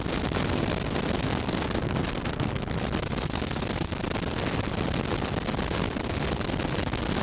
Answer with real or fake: real